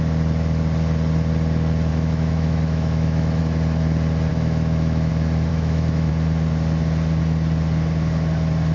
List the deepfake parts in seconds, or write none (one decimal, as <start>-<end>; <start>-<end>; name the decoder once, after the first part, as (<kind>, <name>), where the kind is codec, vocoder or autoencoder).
1.9-3.4 (autoencoder, DAC-VAE); 4.3-5.1; 5.5-6.1